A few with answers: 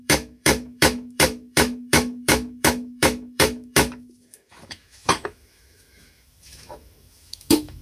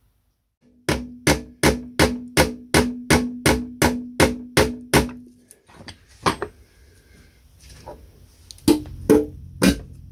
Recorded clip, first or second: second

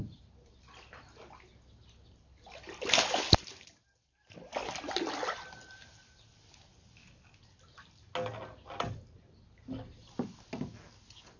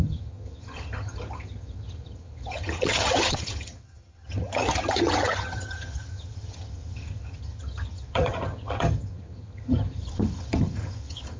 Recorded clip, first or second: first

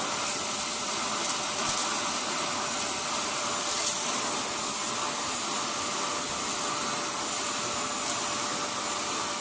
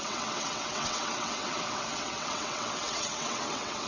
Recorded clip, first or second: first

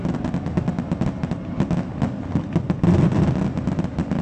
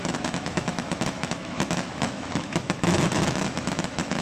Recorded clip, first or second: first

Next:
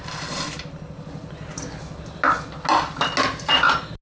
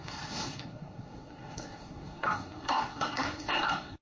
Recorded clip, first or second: first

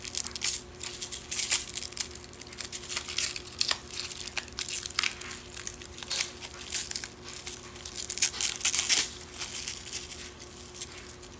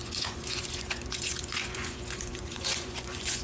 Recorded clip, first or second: first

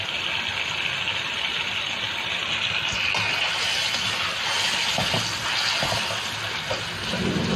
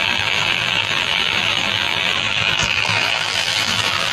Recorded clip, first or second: first